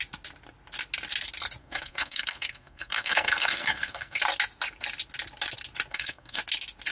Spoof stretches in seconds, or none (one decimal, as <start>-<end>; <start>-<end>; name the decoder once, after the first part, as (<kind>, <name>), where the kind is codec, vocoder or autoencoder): 1.6-4.2 (codec, SNAC); 5.9-6.4